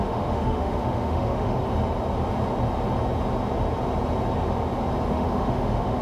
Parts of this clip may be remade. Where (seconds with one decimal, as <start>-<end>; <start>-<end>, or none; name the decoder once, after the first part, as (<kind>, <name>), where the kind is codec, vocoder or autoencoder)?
0.0-1.6 (autoencoder, DAC-VAE); 5.1-6.0